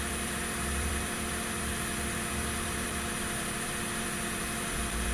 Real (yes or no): no